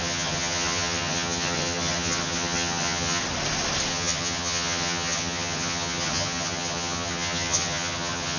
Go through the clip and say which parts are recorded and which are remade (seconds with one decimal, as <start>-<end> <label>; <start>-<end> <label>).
0.0-3.2 remade; 3.2-3.9 recorded; 3.9-8.4 remade